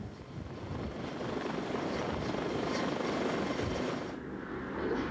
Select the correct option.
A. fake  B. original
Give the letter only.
B